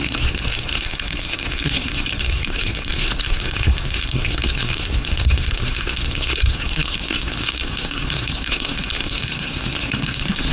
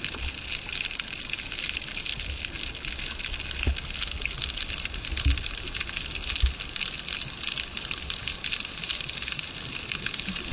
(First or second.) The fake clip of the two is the first